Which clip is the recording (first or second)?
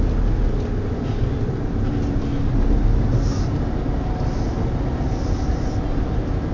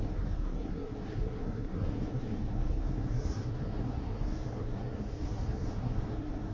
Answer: first